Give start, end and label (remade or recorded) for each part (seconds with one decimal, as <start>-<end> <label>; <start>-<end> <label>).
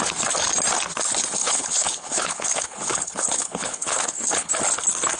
0.0-1.4 recorded; 1.4-4.5 remade; 4.5-5.2 recorded